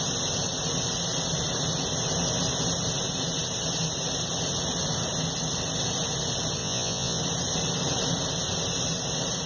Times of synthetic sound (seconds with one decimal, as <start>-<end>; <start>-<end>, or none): 6.6-7.2